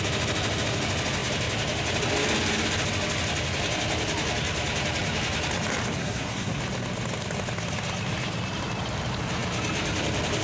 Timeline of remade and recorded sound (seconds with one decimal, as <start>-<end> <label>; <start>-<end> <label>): 0.0-6.0 recorded; 6.0-6.6 remade; 6.6-10.4 recorded